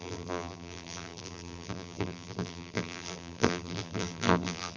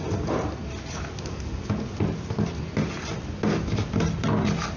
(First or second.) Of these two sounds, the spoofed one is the first